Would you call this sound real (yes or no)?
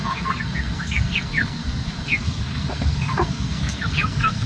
no